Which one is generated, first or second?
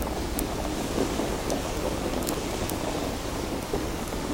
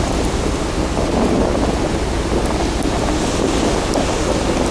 first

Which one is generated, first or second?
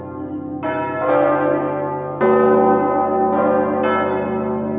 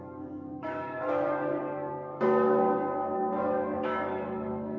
second